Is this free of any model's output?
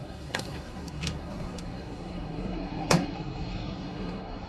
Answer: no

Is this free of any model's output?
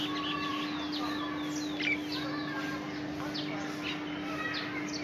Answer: yes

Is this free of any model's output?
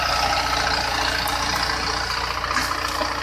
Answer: yes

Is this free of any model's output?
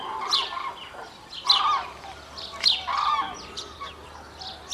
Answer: yes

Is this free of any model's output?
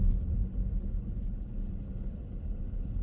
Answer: yes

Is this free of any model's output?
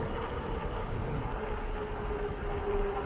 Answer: yes